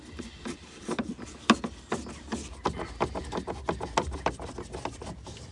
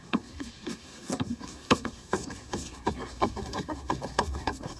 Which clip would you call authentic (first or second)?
first